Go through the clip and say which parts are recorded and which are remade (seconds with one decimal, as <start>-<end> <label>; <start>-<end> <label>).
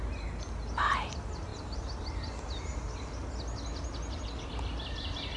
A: 0.0-5.4 recorded